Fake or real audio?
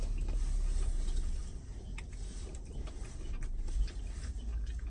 real